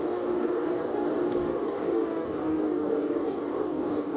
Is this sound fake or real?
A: fake